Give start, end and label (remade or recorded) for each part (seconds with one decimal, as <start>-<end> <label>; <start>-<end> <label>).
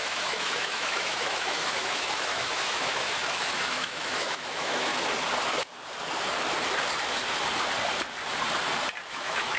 0.0-4.9 remade; 4.9-9.1 recorded; 9.1-9.6 remade